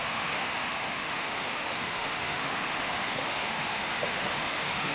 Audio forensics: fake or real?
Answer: fake